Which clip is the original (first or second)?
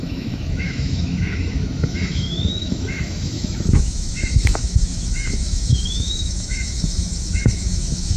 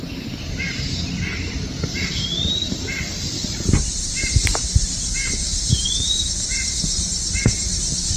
second